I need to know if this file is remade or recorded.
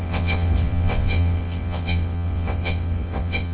remade